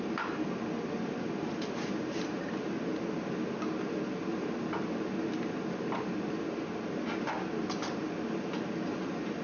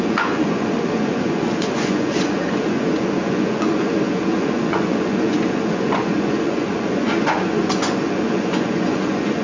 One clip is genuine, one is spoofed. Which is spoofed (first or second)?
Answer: second